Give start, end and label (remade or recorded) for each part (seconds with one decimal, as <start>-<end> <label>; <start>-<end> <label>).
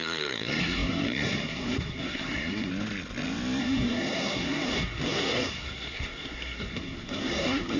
0.0-2.7 remade; 2.7-3.6 recorded; 3.6-7.8 remade